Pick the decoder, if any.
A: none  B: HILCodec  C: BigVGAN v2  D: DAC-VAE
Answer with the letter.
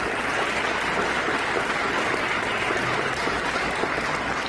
A